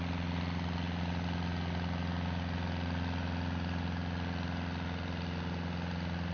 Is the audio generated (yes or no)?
no